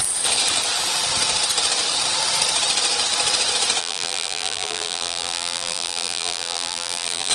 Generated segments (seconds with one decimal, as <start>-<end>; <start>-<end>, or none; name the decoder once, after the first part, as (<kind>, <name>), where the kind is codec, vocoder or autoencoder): 3.8-7.3 (vocoder, BigVGAN v2)